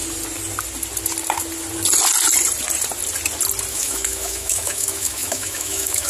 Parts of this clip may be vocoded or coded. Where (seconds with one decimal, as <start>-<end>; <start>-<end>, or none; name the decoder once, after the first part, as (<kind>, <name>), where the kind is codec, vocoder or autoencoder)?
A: 3.7-6.1 (autoencoder, DAC-VAE)